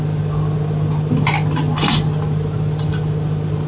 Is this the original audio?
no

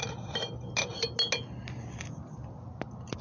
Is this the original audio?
yes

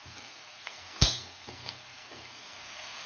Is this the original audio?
no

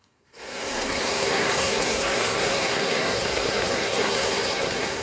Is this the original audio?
no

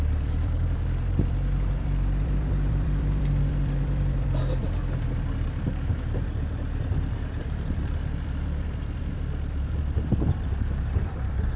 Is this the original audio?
no